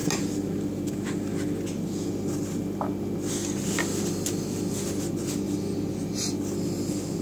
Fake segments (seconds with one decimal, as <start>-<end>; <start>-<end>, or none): none